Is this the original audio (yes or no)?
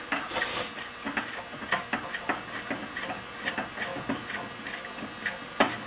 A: yes